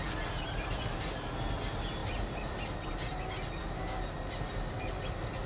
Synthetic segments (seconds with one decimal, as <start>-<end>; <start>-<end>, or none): none